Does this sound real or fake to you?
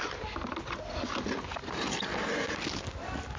real